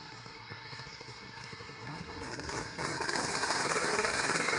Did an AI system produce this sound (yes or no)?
yes